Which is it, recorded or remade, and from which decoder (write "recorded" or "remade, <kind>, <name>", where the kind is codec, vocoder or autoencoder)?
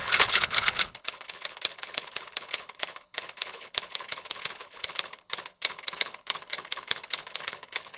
remade, codec, HILCodec